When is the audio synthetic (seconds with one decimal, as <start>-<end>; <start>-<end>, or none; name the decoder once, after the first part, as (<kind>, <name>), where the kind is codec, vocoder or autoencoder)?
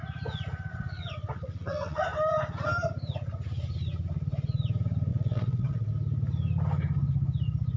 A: 0.7-2.0 (vocoder, WaveNeXt); 5.1-5.9